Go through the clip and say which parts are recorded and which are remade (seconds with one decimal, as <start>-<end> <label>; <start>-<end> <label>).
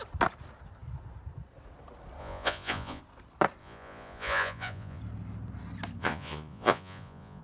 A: 0.0-2.2 recorded; 2.2-3.0 remade; 3.0-3.6 recorded; 3.6-5.0 remade; 5.0-6.0 recorded; 6.0-7.4 remade